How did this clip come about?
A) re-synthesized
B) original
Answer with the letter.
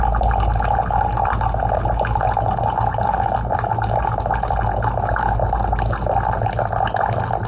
B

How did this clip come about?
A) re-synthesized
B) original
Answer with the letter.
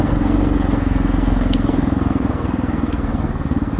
A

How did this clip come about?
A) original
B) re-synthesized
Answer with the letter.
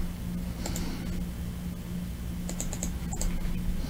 A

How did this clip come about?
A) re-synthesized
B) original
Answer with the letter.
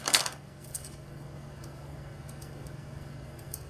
A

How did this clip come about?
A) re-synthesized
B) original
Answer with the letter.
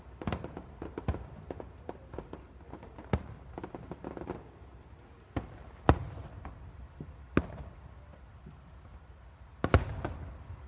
B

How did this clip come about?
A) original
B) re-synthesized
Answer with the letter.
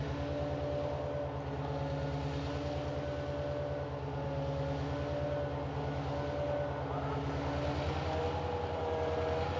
A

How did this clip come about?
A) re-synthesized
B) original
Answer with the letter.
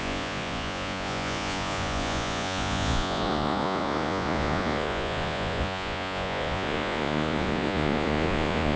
A